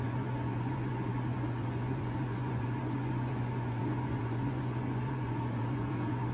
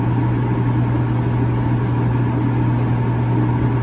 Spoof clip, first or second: first